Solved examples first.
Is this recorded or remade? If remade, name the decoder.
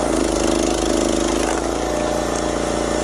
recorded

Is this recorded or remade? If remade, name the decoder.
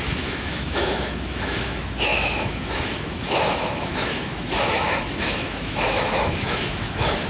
remade, autoencoder, DAC-VAE